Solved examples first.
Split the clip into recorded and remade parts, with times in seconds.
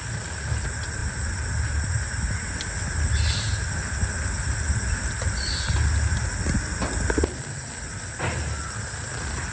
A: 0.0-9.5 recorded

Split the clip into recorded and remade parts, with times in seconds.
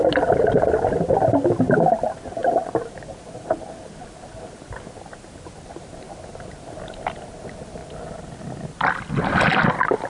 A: 0.0-10.1 recorded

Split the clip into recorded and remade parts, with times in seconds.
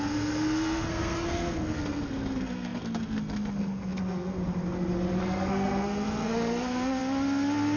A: 0.0-4.4 remade; 4.4-5.2 recorded; 5.2-7.0 remade; 7.0-7.8 recorded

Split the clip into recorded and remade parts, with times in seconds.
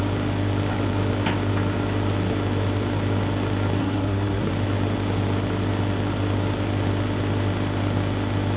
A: 0.0-3.8 recorded; 3.8-4.5 remade; 4.5-8.6 recorded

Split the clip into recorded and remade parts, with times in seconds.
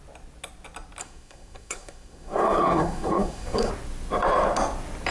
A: 0.0-1.0 recorded; 1.0-3.7 remade; 3.7-5.1 recorded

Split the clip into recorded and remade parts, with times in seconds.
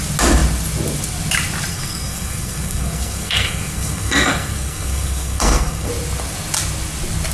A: 0.0-1.7 recorded; 1.7-5.9 remade; 5.9-7.3 recorded